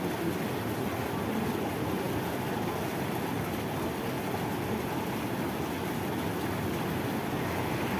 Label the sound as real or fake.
real